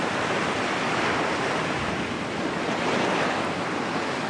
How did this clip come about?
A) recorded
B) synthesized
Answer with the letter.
A